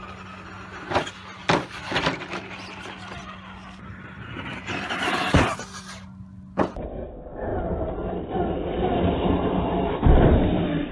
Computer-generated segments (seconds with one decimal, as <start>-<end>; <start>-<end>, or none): none